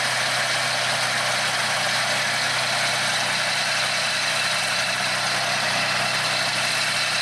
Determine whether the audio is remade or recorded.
recorded